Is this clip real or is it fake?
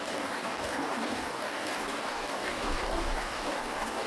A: fake